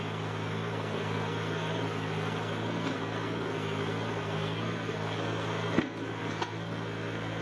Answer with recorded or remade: remade